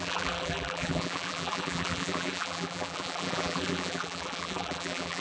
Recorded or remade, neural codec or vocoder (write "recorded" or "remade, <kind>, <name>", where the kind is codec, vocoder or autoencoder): remade, vocoder, BigVGAN v2